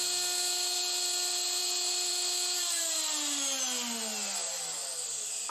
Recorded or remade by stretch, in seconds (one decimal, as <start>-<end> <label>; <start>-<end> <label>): 0.0-5.5 recorded